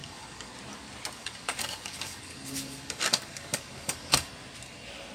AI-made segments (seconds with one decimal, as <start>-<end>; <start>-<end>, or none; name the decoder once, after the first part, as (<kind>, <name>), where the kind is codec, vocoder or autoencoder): 0.0-0.5 (codec, DAC); 1.2-4.3